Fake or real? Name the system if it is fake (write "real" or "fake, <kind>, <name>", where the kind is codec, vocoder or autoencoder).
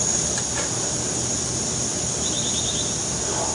real